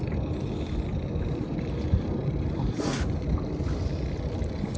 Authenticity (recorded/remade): recorded